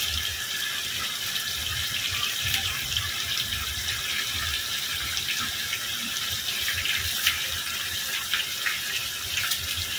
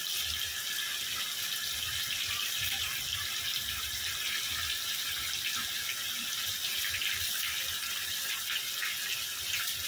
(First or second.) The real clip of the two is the second